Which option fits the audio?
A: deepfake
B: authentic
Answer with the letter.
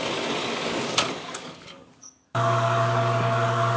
A